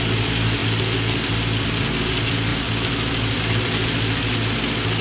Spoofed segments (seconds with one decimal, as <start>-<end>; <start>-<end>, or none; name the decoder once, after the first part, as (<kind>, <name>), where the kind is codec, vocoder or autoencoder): none

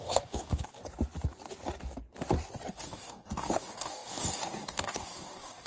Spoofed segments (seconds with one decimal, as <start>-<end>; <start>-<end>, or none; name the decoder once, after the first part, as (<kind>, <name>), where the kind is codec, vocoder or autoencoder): 0.0-0.8 (codec, DAC); 2.7-5.7